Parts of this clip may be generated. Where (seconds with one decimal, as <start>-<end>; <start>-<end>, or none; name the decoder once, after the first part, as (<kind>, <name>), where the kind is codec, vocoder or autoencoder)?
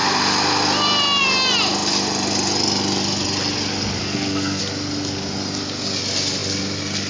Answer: 4.0-4.6 (codec, SNAC)